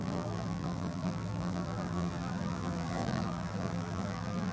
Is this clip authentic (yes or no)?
no